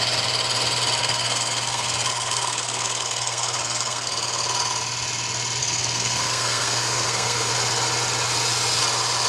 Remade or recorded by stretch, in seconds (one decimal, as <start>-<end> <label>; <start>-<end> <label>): 0.0-1.0 recorded; 1.0-4.1 remade; 4.1-5.6 recorded; 5.6-7.5 remade; 7.5-9.3 recorded